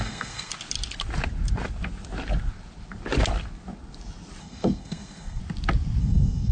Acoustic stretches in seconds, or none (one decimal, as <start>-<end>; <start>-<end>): 0.5-4.4; 5.4-6.0